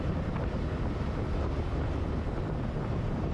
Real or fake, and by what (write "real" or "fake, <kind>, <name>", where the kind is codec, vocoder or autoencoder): fake, vocoder, BigVGAN v2